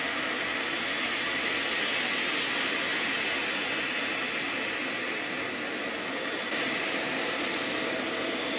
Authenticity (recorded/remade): recorded